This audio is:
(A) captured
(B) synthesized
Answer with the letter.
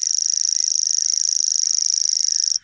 A